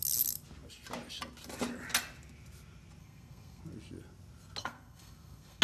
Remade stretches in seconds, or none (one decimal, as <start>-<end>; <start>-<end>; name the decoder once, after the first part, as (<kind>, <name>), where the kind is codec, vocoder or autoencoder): 3.0-3.6 (codec, SNAC); 4.6-5.6